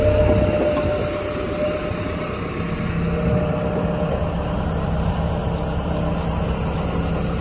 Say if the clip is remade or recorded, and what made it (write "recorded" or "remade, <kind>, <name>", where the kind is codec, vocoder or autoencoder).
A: recorded